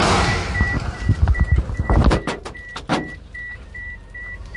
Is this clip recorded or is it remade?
remade